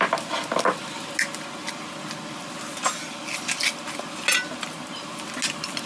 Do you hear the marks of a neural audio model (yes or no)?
no